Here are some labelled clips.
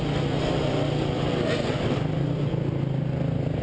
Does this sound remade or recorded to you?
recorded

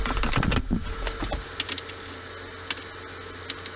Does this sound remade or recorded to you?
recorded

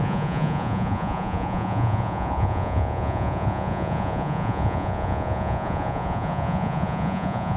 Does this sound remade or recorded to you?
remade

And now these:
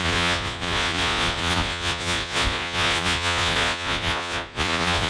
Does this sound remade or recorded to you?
remade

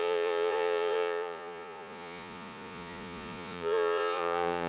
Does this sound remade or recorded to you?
remade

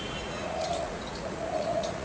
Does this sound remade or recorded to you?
remade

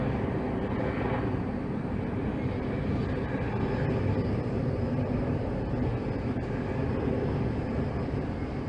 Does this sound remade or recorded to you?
recorded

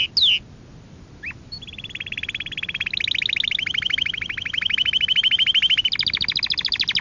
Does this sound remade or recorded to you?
recorded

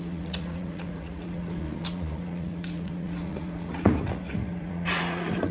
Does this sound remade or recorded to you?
remade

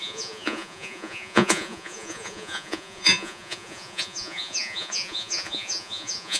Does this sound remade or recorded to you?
remade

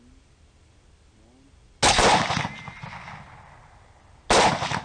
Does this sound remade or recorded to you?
recorded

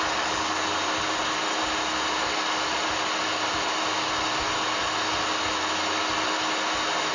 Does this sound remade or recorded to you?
recorded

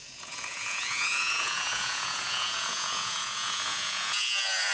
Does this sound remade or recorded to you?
remade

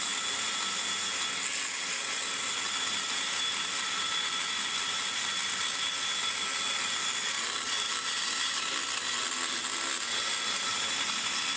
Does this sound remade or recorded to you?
recorded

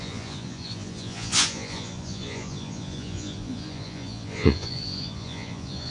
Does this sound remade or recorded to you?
remade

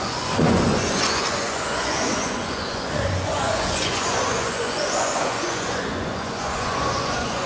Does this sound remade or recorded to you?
remade